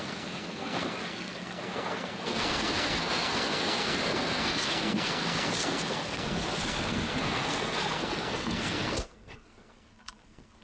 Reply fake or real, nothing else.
fake